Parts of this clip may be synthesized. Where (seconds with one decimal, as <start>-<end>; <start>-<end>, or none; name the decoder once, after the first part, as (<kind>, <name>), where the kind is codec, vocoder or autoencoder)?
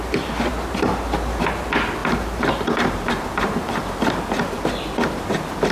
2.0-4.1 (vocoder, BigVGAN v2)